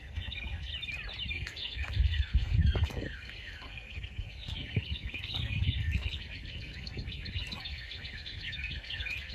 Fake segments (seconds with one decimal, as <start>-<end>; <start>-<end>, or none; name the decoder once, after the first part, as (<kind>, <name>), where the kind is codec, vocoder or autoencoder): 0.0-0.7 (codec, SNAC); 1.3-9.3